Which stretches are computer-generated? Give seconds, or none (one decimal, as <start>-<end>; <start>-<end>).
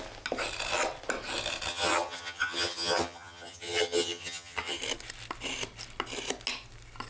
1.7-4.8